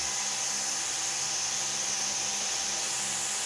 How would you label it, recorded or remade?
recorded